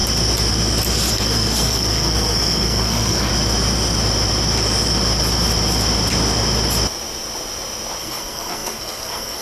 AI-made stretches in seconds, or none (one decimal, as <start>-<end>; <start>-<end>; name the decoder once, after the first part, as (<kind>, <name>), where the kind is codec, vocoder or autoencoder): 1.1-3.3 (codec, SNAC); 8.0-9.4